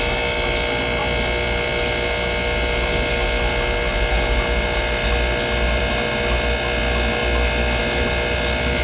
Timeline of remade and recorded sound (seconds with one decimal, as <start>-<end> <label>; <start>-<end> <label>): 0.0-8.8 recorded